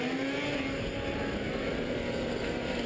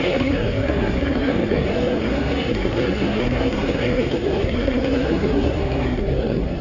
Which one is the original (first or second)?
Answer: first